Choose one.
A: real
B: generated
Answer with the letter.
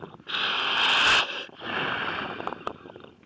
A